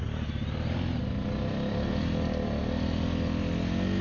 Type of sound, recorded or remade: recorded